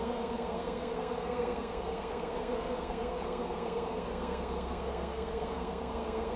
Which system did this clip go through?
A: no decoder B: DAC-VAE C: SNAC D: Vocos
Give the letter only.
C